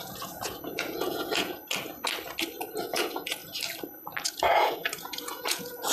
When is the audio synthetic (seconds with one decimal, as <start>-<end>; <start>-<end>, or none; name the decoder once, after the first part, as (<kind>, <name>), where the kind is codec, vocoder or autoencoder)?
0.0-1.6 (vocoder, Vocos); 2.8-3.4; 4.2-5.9